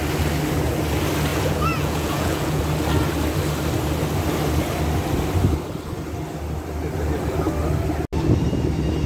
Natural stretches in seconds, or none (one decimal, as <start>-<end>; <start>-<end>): 0.0-1.3; 2.6-9.1